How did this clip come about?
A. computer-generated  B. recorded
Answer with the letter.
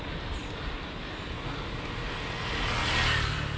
B